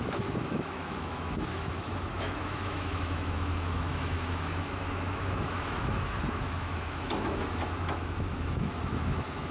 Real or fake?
fake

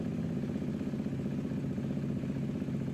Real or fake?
real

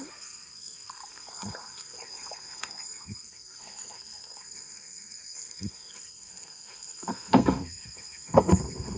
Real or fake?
fake